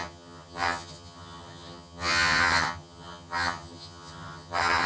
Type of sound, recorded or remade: remade